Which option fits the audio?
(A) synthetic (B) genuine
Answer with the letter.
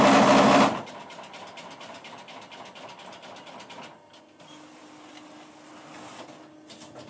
B